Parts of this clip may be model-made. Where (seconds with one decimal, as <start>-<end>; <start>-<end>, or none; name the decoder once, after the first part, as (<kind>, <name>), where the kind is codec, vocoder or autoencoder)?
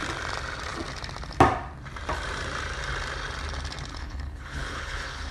3.9-5.3 (codec, HILCodec)